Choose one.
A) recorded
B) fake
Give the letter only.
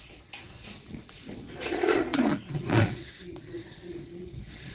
B